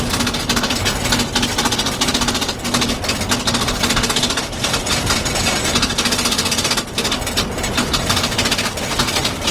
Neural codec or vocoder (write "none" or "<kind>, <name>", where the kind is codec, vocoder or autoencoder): none